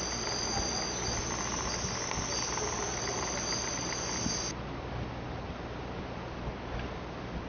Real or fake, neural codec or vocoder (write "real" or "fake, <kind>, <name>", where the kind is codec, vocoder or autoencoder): real